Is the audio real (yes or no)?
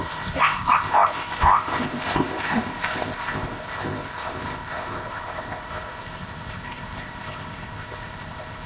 no